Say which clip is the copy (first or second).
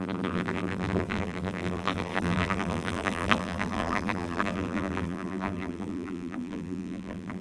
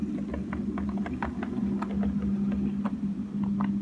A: first